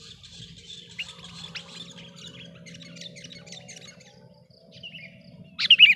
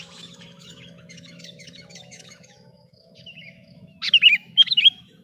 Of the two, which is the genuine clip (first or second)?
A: first